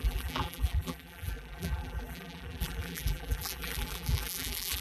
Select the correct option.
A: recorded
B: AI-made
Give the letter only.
B